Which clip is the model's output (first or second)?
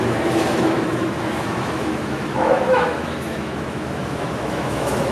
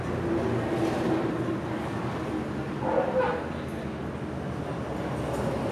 first